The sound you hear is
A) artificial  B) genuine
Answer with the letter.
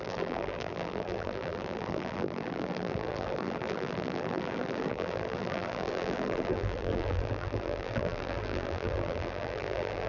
A